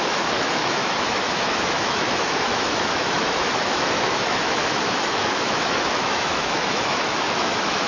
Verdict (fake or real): fake